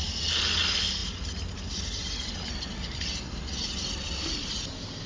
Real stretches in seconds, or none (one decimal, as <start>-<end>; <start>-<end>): 0.0-5.1